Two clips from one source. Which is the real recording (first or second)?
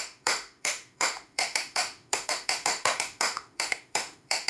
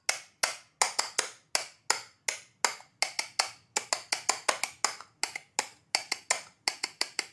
second